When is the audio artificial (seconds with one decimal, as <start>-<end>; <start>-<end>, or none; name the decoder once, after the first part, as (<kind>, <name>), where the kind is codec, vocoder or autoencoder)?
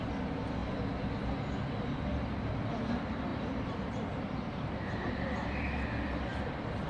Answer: 3.3-5.1 (vocoder, BigVGAN v2)